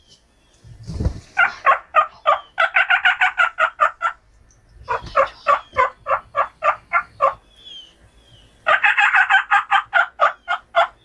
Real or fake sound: real